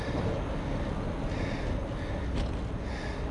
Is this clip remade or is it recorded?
recorded